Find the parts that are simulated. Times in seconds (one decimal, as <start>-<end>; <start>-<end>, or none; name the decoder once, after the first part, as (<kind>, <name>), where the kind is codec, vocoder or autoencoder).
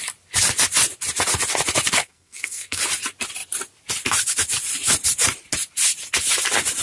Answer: 2.0-2.8 (codec, SNAC)